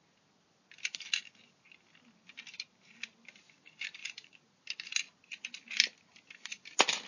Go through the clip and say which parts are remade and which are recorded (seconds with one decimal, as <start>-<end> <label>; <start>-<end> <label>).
0.0-4.0 recorded; 4.0-4.6 remade; 4.6-7.1 recorded